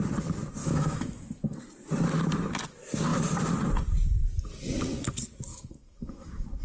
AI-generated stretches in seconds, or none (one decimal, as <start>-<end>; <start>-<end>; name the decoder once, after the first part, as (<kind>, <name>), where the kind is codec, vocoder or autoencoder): 0.6-1.7 (autoencoder, DAC-VAE); 5.5-6.6